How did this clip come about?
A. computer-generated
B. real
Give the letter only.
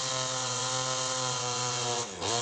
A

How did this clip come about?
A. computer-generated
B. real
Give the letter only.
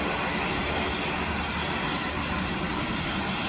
B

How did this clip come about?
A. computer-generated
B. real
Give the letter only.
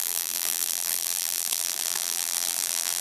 A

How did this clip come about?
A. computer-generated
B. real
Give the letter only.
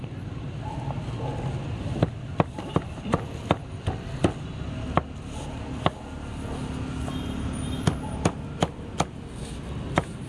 B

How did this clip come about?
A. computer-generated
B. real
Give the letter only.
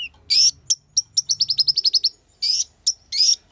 B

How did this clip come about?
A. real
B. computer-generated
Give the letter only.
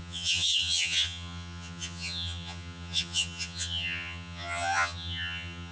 B